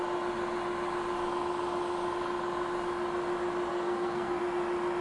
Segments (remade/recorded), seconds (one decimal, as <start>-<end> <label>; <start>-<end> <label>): 0.0-3.7 recorded; 3.7-4.4 remade; 4.4-5.0 recorded